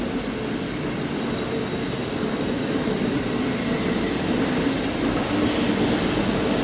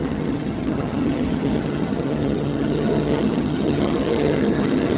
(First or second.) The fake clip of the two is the second